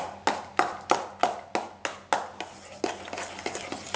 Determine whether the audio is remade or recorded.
recorded